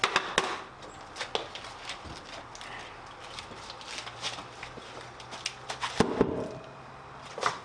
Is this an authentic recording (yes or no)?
yes